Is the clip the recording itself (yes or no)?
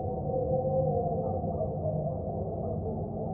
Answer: yes